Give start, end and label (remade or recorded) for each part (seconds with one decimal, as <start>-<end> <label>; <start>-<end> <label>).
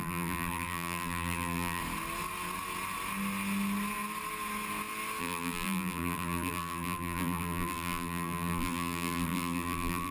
0.0-1.8 remade; 1.8-5.2 recorded; 5.2-10.1 remade